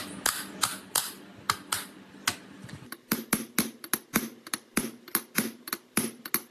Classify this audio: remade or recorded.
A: recorded